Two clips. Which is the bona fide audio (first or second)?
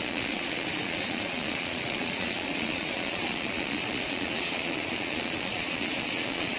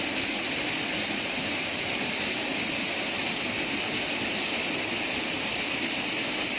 second